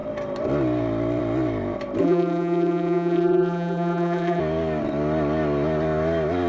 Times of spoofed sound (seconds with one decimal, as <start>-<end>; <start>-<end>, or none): 2.0-4.4